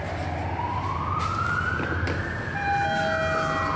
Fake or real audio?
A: real